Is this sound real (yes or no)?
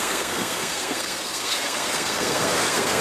no